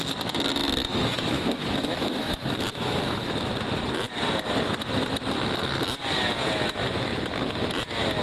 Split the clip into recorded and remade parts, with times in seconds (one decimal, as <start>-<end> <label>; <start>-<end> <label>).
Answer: 0.0-0.6 recorded; 0.6-3.3 remade; 3.3-8.2 recorded